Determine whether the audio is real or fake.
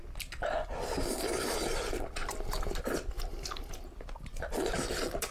fake